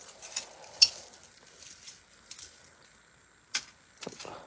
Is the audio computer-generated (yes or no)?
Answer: no